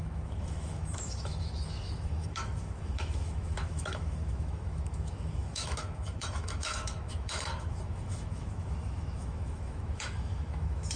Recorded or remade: remade